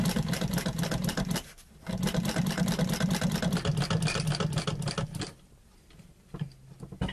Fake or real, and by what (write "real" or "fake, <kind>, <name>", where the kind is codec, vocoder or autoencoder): real